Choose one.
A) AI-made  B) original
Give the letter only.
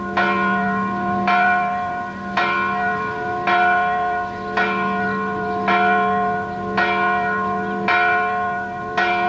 B